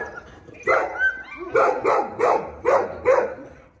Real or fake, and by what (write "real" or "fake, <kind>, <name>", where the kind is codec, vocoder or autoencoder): real